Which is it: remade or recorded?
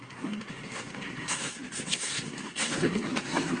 remade